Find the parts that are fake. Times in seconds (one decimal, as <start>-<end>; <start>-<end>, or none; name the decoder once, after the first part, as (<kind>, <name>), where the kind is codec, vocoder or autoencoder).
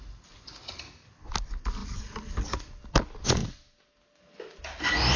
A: none